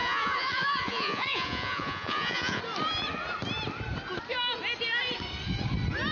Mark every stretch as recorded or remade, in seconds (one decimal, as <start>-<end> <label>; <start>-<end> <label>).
0.0-2.6 remade; 2.6-6.1 recorded

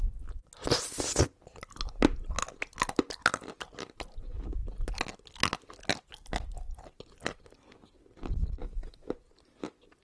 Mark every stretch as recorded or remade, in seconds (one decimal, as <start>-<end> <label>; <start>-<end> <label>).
0.0-8.6 recorded; 8.6-9.1 remade; 9.1-10.0 recorded

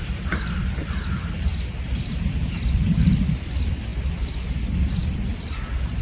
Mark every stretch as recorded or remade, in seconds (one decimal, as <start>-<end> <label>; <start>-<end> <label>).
0.0-1.5 remade; 1.5-2.0 recorded; 2.0-3.9 remade; 3.9-4.5 recorded; 4.5-6.0 remade

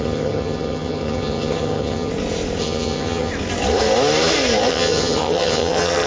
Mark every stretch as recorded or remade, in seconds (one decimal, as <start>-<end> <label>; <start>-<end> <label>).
0.0-2.1 remade; 2.1-2.6 recorded; 2.6-3.3 remade; 3.3-4.7 recorded; 4.7-6.1 remade

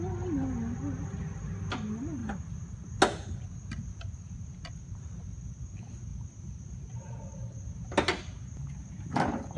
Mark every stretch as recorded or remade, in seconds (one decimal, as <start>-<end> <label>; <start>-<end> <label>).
0.0-9.6 recorded